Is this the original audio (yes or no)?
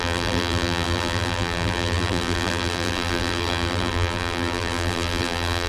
no